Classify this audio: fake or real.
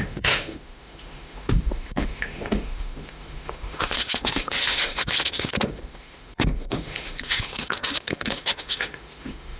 fake